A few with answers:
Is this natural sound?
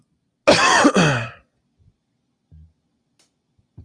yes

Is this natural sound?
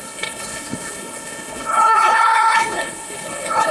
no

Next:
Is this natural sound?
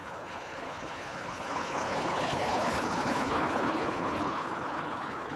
no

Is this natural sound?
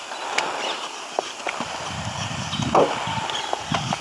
yes